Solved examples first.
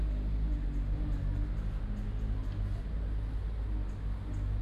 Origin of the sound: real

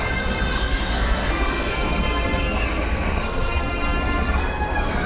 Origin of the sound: fake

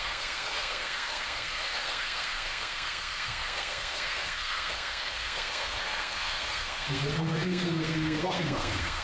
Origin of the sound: fake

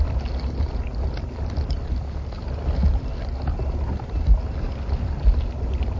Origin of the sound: real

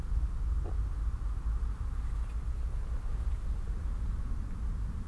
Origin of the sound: real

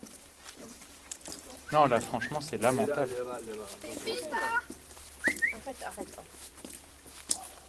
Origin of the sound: fake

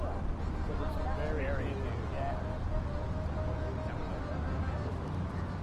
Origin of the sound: real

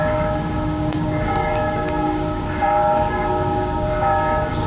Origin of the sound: fake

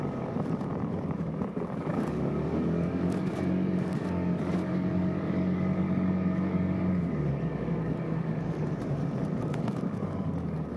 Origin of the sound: fake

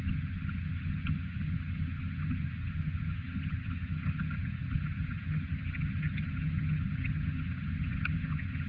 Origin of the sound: fake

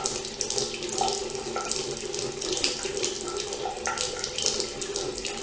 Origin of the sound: real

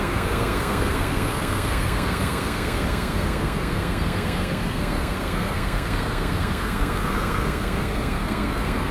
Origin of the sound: fake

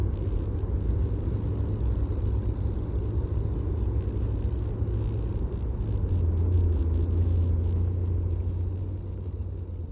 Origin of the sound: real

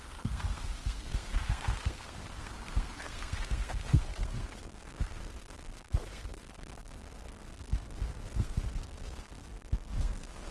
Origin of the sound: fake